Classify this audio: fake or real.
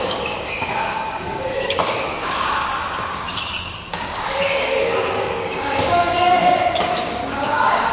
fake